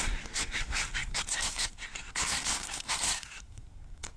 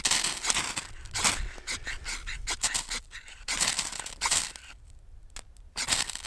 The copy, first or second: first